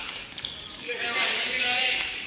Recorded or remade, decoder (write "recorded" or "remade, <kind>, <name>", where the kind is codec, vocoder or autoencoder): remade, codec, DAC